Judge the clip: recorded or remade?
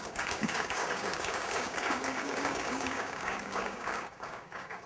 remade